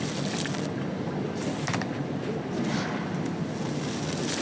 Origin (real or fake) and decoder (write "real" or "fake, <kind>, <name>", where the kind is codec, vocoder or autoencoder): real